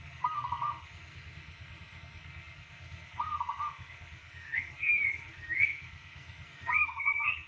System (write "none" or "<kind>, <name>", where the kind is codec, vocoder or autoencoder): codec, SNAC